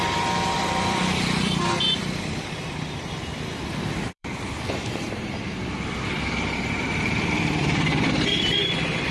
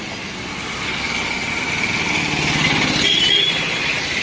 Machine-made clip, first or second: first